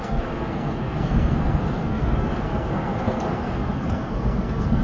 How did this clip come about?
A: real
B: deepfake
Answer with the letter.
B